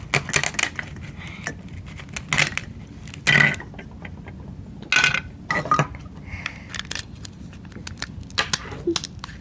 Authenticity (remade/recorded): recorded